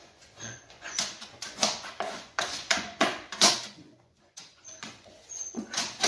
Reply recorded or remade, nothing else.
remade